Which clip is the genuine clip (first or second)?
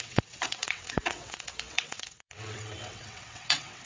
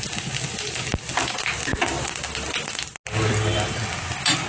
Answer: second